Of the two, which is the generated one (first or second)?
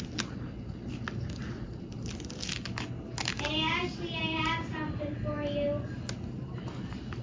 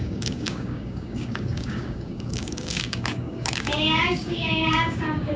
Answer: second